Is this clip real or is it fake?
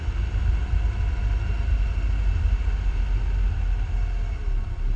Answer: real